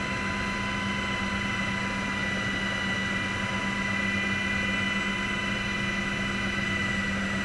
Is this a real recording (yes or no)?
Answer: yes